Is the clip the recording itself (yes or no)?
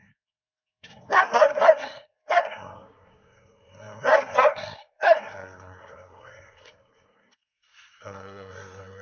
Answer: no